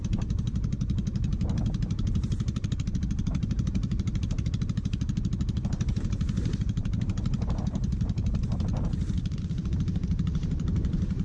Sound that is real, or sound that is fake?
fake